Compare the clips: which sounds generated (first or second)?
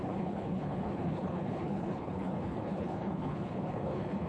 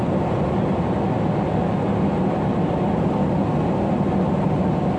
first